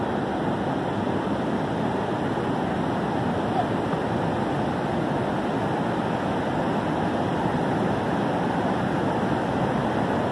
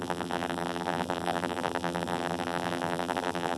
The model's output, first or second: second